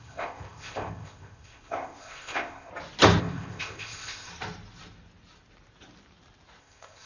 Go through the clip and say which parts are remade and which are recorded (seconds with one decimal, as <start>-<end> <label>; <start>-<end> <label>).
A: 0.0-2.7 remade; 2.7-3.2 recorded; 3.2-4.3 remade; 4.3-6.6 recorded; 6.6-7.1 remade